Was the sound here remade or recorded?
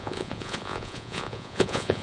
remade